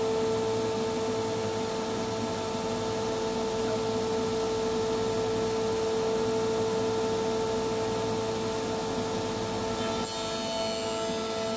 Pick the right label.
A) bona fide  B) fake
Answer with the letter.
A